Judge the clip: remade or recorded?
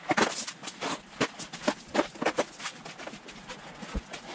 recorded